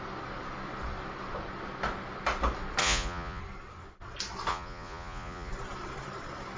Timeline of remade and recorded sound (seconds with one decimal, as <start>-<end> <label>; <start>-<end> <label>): 0.0-2.8 recorded; 2.8-3.4 remade; 3.4-4.5 recorded; 4.5-5.5 remade; 5.5-6.6 recorded